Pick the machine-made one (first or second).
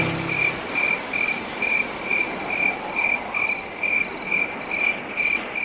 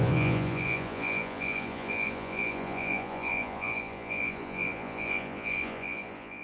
second